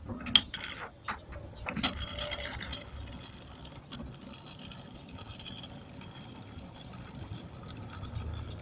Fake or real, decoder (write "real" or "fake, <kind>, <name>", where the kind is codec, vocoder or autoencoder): real